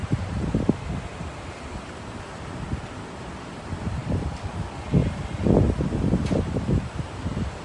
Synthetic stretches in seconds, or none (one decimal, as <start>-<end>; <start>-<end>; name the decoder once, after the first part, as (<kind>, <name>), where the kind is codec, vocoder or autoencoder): 0.0-0.7 (vocoder, BigVGAN v2); 4.0-4.5; 5.0-5.5